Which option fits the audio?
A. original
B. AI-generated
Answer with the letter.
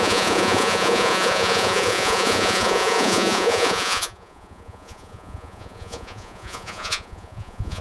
B